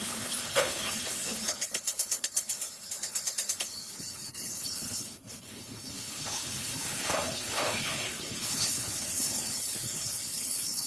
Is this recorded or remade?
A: remade